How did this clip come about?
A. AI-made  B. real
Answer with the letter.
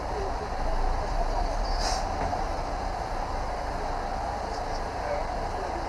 B